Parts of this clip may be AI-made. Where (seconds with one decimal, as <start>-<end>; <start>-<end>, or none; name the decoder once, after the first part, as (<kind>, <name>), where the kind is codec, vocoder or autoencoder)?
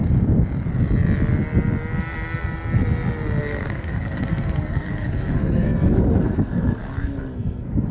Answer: 3.4-7.9 (codec, SNAC)